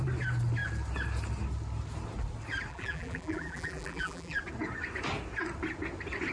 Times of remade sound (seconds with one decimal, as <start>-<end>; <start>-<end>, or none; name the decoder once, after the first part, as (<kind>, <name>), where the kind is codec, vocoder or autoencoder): 2.7-4.4 (vocoder, BigVGAN v2)